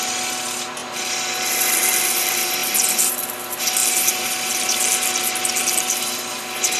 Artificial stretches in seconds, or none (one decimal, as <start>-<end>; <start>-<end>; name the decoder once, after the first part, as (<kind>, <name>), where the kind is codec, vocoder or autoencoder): none